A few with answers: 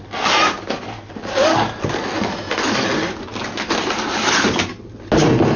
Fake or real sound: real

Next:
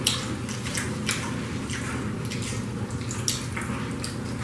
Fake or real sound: real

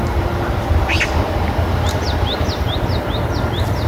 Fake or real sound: real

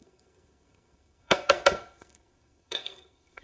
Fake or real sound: fake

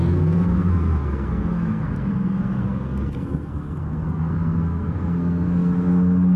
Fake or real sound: fake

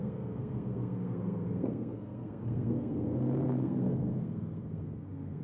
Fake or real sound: fake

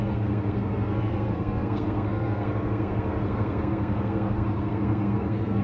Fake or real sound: fake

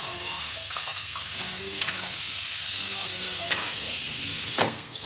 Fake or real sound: fake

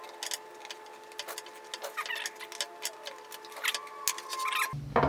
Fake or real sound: real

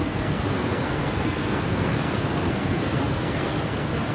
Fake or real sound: fake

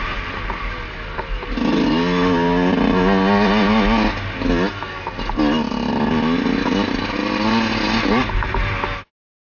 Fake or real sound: real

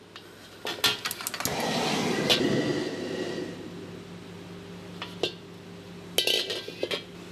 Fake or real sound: real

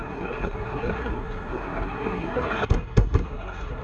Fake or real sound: fake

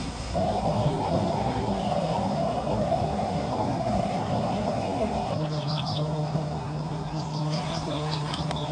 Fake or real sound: fake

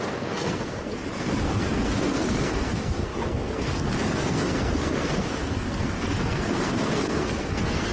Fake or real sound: fake